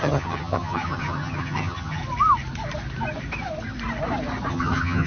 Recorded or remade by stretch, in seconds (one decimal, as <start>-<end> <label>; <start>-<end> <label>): 0.0-2.0 remade; 2.0-4.5 recorded; 4.5-5.1 remade